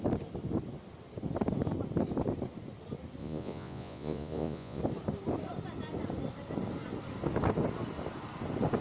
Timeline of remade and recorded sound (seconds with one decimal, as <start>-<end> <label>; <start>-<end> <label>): 0.0-3.2 recorded; 3.2-4.8 remade; 4.8-8.8 recorded